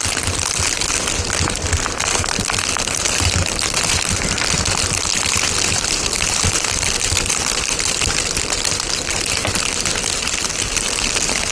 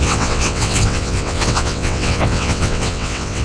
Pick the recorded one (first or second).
first